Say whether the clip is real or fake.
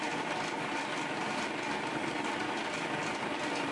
real